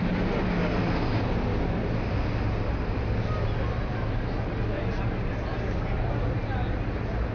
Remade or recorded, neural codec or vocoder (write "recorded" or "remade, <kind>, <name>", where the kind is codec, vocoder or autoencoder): recorded